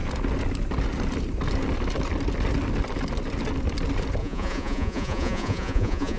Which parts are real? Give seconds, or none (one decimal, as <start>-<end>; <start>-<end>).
0.0-4.2